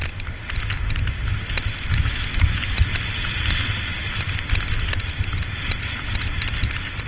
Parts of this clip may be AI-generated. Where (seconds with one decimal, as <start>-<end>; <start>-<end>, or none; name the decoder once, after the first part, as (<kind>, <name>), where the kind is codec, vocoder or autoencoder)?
1.9-2.6 (autoencoder, DAC-VAE)